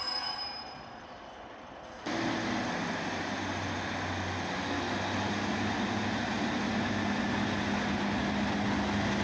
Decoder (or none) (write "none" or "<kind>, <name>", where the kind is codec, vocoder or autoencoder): none